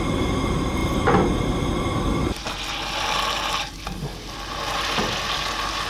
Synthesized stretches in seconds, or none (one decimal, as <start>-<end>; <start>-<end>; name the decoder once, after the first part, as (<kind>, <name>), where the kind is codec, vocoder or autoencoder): none